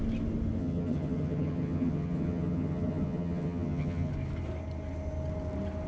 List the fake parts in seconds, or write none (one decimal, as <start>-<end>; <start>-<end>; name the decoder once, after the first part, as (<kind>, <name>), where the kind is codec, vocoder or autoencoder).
0.6-4.1 (vocoder, HiFi-GAN)